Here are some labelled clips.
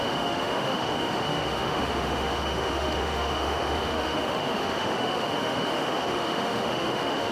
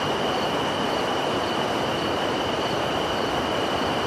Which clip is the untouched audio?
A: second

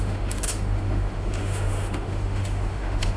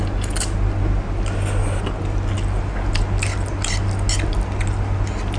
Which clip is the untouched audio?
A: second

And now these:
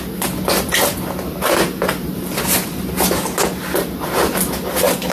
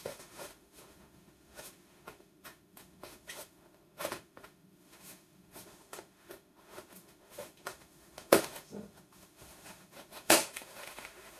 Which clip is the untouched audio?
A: first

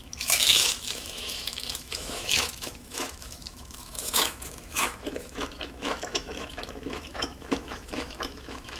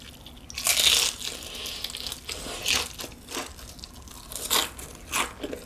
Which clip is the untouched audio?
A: second